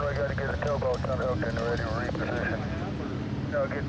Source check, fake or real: real